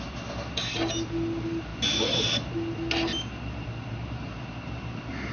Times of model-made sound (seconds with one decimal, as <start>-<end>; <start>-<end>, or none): none